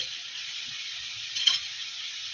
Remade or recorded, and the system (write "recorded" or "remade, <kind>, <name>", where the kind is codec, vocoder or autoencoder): remade, vocoder, Vocos